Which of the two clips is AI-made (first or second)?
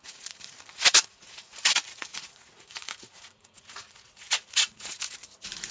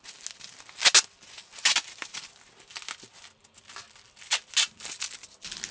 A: first